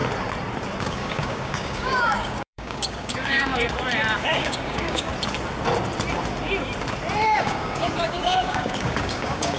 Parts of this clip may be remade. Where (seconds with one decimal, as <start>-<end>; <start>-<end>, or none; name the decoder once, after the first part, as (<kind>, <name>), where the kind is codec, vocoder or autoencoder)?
0.8-3.5 (codec, DAC); 4.2-5.1; 7.4-9.6